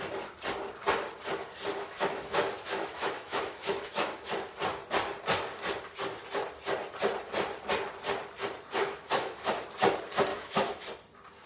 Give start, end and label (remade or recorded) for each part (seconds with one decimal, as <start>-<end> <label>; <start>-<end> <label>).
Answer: 0.0-1.7 recorded; 1.7-4.3 remade; 4.3-8.8 recorded; 8.8-9.5 remade; 9.5-10.3 recorded; 10.3-10.8 remade; 10.8-11.5 recorded